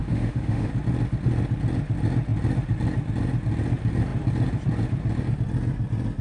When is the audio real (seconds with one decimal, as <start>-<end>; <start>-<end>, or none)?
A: 0.7-6.2